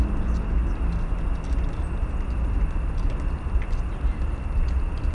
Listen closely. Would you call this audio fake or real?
real